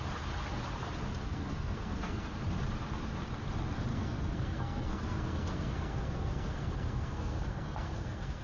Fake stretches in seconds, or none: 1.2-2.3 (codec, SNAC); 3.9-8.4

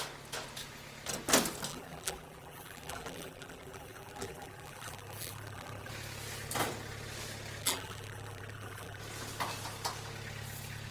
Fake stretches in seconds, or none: 1.7-5.9 (vocoder, BigVGAN v2); 7.6-9.0

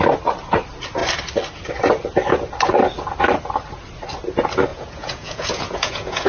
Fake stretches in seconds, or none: 4.7-6.3 (vocoder, Vocos)

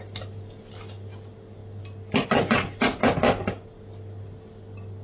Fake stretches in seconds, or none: none

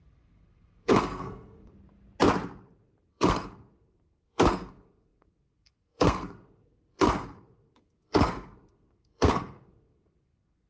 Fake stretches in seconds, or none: 0.0-1.7 (codec, SNAC); 3.1-10.7

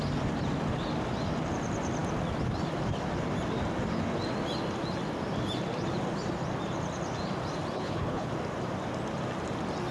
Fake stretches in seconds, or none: 7.7-8.3 (codec, HILCodec)

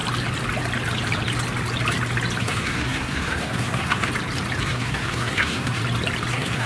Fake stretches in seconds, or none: 2.4-4.1 (codec, SNAC); 4.6-5.8; 6.3-6.7

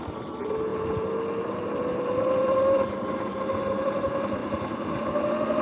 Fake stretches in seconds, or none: none